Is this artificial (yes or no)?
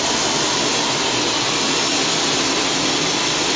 no